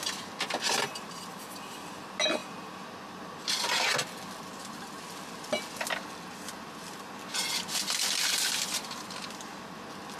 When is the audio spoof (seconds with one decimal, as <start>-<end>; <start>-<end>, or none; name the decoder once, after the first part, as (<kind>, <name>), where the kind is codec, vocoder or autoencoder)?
none